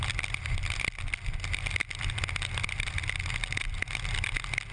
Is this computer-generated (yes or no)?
no